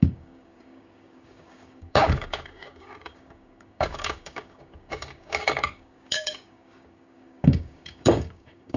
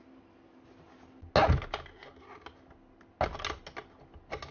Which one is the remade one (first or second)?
first